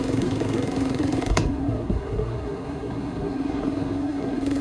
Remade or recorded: remade